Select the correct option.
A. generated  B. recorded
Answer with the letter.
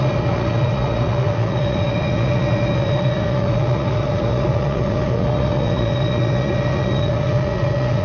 A